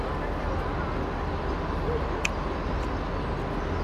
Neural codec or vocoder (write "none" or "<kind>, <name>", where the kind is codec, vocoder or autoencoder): none